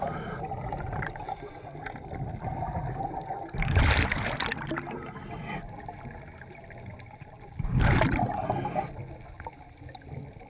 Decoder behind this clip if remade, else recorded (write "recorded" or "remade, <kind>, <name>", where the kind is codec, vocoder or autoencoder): recorded